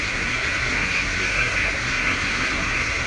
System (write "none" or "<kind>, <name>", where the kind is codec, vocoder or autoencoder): codec, SNAC